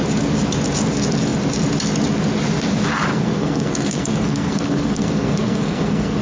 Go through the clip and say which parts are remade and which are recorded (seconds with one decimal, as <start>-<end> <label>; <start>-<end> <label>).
0.0-3.1 recorded; 3.1-6.2 remade